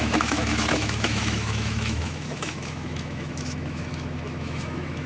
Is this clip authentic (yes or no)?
no